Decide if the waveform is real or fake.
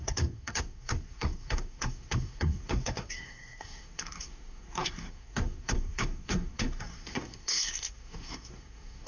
fake